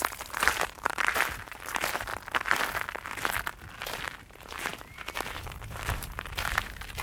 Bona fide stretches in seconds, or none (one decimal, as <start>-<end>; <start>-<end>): 2.1-4.2; 4.7-5.4